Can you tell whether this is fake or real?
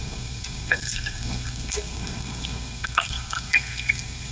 fake